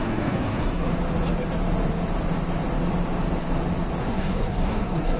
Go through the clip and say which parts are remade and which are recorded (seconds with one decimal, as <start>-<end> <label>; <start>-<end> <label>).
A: 0.0-0.9 remade; 0.9-4.0 recorded; 4.0-5.2 remade